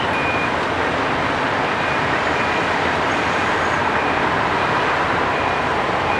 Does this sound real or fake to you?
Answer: fake